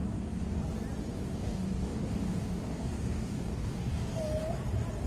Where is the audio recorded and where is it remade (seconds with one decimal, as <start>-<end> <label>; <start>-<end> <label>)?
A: 0.0-0.6 remade; 0.6-1.1 recorded; 1.1-4.2 remade; 4.2-5.1 recorded